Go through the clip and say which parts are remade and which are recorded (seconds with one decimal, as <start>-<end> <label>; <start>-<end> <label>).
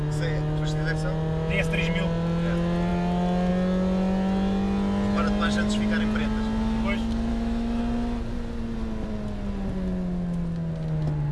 0.0-7.3 recorded; 7.3-7.8 remade; 7.8-11.3 recorded